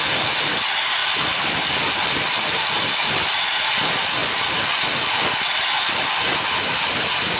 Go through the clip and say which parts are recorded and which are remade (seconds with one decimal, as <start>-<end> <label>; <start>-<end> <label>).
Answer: 0.0-7.4 recorded